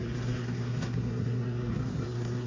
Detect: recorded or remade remade